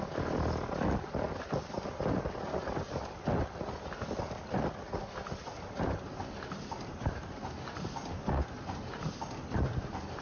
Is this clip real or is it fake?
real